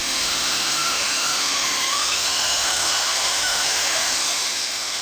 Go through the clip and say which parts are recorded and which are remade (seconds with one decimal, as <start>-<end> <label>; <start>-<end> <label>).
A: 0.0-5.0 remade

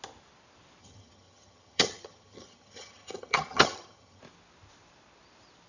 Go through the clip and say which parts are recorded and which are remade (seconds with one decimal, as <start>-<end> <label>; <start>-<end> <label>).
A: 0.0-0.8 recorded; 0.8-4.2 remade; 4.2-5.7 recorded

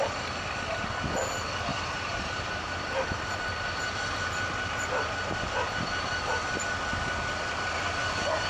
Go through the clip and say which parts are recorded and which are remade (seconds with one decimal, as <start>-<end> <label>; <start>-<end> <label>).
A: 0.0-1.7 recorded; 1.7-3.4 remade; 3.4-8.5 recorded

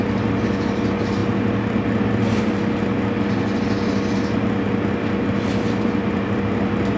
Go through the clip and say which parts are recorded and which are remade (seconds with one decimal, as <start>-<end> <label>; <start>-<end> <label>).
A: 0.0-7.0 recorded

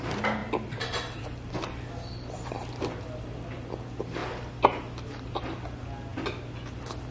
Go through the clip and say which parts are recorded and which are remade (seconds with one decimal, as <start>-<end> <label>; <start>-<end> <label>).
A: 0.0-4.2 recorded; 4.2-5.3 remade; 5.3-7.1 recorded